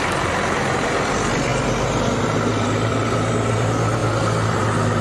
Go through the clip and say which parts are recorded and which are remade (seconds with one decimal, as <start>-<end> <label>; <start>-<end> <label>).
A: 0.0-4.0 remade; 4.0-4.6 recorded; 4.6-5.0 remade